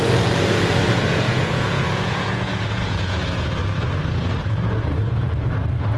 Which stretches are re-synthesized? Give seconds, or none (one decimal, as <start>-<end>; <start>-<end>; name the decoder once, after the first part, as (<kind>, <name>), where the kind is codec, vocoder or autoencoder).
1.1-3.6 (vocoder, Vocos); 4.4-5.5